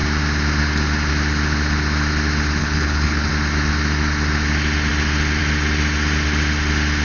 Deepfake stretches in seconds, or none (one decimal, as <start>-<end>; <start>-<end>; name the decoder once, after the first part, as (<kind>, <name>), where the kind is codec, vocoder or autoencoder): 2.6-3.3 (codec, HILCodec)